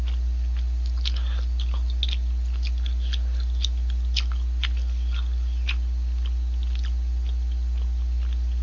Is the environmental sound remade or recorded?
recorded